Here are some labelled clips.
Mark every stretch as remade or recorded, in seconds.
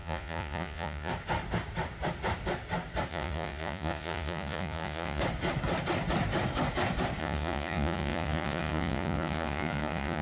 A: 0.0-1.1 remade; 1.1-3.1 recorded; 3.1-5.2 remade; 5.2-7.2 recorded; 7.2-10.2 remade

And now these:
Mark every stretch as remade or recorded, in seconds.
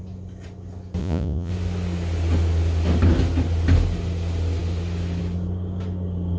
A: 0.0-1.0 recorded; 1.0-1.5 remade; 1.5-6.4 recorded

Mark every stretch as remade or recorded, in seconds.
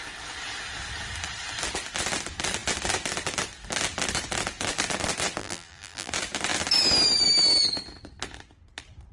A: 0.0-5.4 recorded; 5.4-6.1 remade; 6.1-9.1 recorded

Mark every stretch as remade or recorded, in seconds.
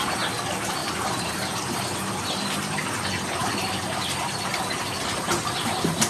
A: 0.0-0.8 recorded; 0.8-1.6 remade; 1.6-6.1 recorded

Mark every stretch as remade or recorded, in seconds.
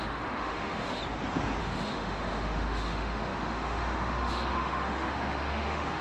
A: 0.0-1.0 remade; 1.0-1.6 recorded; 1.6-6.0 remade